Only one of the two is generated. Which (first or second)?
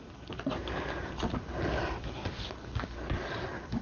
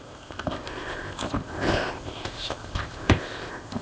second